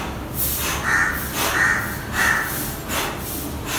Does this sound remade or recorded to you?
recorded